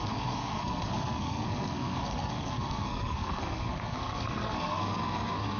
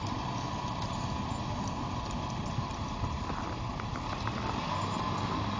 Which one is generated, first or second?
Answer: first